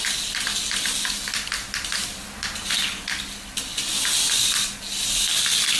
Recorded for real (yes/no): yes